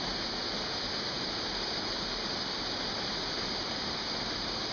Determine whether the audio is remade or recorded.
recorded